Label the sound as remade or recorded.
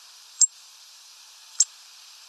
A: remade